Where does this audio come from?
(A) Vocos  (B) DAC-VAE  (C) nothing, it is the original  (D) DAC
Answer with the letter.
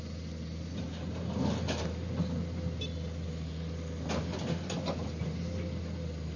C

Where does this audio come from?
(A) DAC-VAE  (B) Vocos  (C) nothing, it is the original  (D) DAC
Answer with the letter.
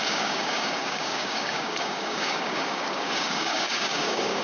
D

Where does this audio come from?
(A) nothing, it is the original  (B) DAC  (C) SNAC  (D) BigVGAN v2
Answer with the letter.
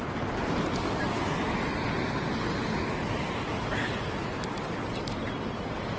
A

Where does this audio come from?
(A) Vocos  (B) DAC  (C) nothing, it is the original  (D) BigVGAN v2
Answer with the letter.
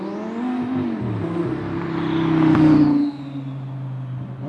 C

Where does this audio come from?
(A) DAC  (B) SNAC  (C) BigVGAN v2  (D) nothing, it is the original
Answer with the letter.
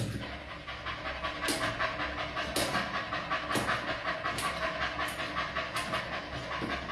D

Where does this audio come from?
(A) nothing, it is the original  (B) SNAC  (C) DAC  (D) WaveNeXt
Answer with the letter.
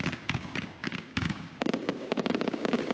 C